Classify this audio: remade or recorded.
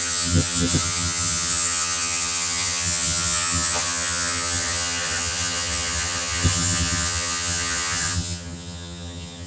remade